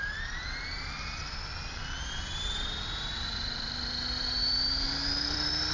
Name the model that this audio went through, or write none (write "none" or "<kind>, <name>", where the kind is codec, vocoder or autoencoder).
vocoder, BigVGAN v2